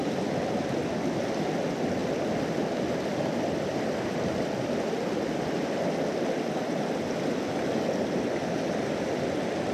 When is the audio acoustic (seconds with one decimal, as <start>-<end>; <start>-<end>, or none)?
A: 0.0-9.7